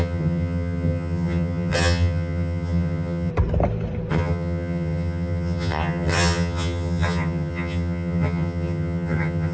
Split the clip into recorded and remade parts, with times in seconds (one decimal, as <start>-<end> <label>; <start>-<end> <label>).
0.0-3.3 remade; 3.3-4.1 recorded; 4.1-9.5 remade